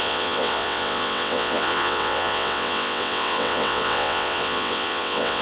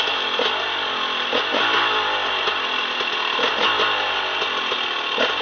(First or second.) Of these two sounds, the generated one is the first